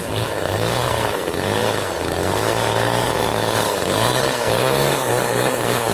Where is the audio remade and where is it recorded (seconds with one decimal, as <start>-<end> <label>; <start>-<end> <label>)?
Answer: 0.0-5.9 remade